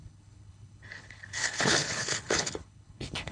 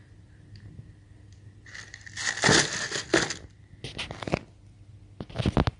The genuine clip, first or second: second